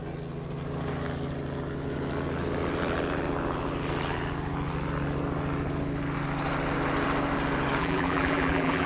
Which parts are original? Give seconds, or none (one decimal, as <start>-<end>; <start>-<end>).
0.0-7.8